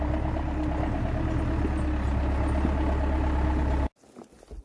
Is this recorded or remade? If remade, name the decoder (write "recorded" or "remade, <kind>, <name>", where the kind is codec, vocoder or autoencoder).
recorded